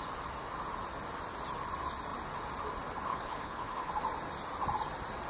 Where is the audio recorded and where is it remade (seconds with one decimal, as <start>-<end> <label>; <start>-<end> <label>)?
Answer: 0.0-3.1 recorded; 3.1-3.9 remade; 3.9-5.3 recorded